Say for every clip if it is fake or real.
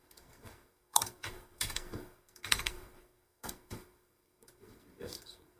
fake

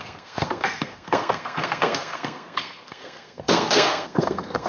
fake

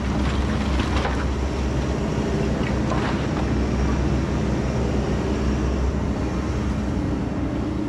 real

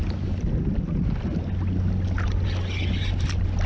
real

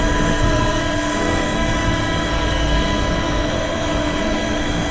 fake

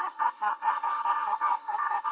fake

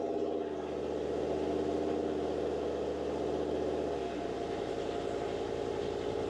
real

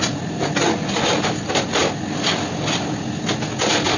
real